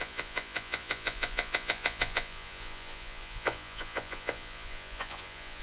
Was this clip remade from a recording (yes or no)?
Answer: yes